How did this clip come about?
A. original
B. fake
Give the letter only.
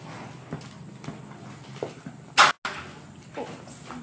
A